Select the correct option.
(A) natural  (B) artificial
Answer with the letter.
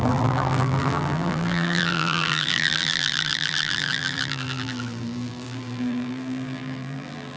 B